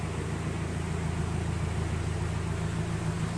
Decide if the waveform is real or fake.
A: real